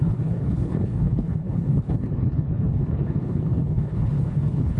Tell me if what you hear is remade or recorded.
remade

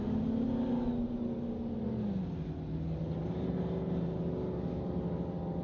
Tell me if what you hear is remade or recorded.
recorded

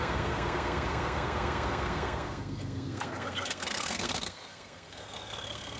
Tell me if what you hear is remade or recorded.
remade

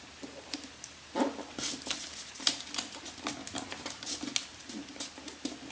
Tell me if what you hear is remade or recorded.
recorded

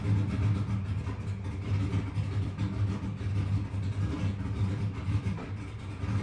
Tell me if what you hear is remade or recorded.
recorded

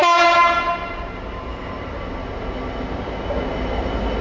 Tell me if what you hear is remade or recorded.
recorded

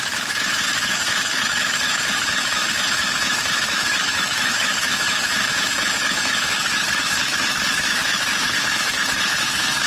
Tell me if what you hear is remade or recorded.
remade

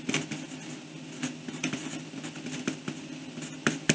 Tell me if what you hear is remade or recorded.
recorded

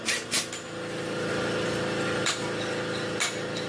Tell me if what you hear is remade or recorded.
recorded